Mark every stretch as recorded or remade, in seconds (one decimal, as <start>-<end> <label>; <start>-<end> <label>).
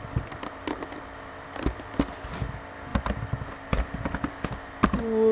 0.0-5.3 recorded